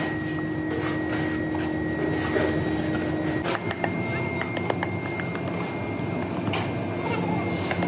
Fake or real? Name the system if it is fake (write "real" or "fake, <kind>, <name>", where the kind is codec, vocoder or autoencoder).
real